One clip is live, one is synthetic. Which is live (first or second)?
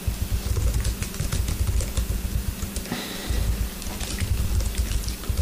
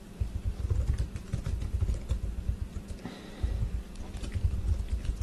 first